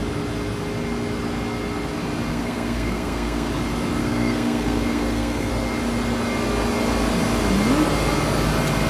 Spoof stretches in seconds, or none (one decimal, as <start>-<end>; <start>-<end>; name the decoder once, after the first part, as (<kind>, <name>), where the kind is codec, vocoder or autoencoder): 2.3-3.5 (codec, SNAC); 4.0-5.5